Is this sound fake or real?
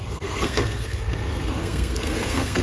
fake